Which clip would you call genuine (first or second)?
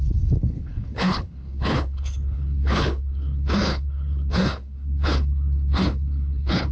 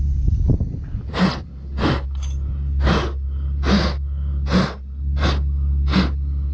second